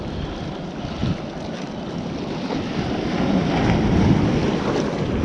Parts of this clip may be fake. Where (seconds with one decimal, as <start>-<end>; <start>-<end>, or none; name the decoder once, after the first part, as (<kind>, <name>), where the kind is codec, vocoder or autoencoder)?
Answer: none